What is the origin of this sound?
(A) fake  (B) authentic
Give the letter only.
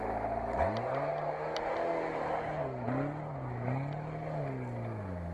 B